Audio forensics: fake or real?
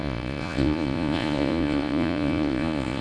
fake